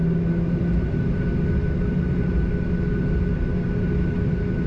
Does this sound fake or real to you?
real